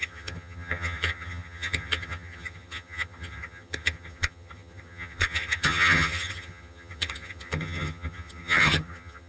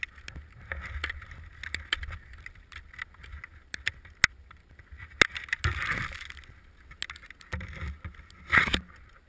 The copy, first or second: first